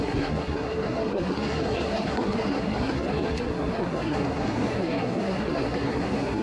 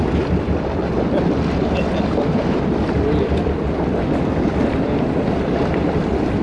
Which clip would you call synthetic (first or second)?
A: first